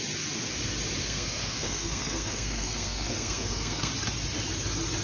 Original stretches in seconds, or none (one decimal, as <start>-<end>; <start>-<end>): 0.0-1.0; 3.9-5.0